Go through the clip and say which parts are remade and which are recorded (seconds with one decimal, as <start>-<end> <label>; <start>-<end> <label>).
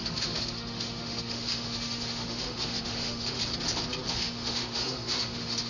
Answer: 0.0-3.4 remade; 3.4-4.1 recorded; 4.1-5.7 remade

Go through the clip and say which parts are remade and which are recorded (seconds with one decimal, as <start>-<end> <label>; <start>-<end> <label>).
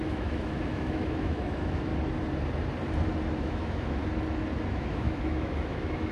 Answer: 0.0-1.9 remade; 1.9-3.4 recorded; 3.4-4.0 remade; 4.0-4.7 recorded; 4.7-6.1 remade